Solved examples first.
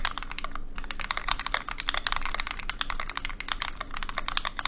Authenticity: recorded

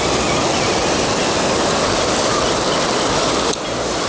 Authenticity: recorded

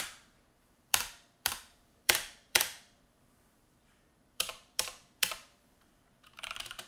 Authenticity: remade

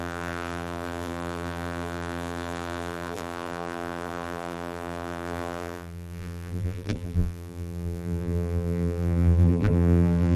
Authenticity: remade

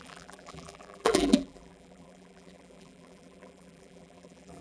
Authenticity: remade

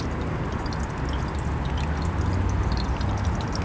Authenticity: recorded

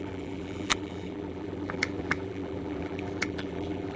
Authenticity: remade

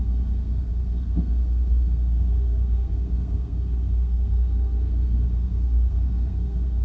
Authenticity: remade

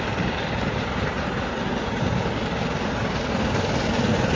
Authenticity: recorded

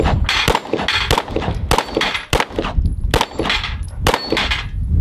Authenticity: recorded